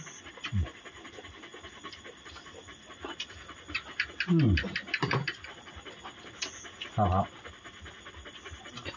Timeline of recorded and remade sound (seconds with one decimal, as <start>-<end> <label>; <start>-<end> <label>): 0.0-9.0 recorded